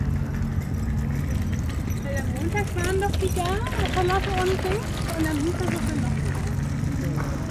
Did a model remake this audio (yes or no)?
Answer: no